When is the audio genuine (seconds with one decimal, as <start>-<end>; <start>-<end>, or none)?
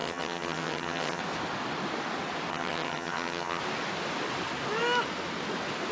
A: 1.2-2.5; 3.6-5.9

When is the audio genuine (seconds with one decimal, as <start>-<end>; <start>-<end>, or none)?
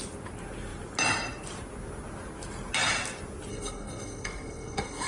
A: 0.0-3.5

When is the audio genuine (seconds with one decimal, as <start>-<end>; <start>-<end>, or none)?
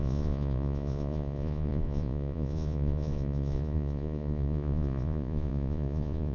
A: none